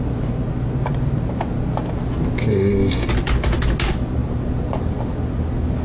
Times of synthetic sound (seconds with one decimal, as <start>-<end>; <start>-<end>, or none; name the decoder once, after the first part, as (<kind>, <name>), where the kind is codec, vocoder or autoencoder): 2.5-3.1 (codec, SNAC)